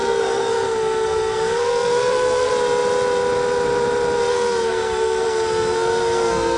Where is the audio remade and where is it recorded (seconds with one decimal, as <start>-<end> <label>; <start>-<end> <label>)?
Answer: 0.0-2.5 remade; 2.5-4.3 recorded; 4.3-6.6 remade